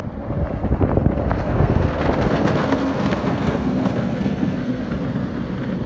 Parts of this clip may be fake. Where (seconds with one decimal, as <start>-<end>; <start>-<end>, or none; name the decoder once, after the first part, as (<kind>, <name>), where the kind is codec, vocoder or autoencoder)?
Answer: 1.4-4.9 (codec, SNAC)